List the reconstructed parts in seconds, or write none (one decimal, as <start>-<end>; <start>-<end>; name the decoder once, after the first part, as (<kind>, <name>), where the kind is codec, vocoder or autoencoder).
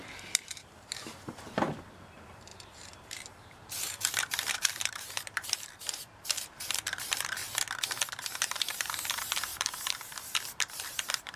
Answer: 0.0-7.4 (vocoder, BigVGAN v2); 8.1-11.4